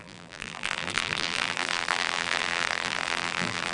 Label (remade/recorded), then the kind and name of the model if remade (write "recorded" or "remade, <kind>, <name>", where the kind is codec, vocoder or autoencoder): remade, vocoder, BigVGAN v2